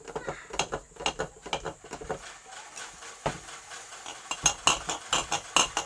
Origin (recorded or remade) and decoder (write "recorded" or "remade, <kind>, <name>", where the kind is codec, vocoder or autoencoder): recorded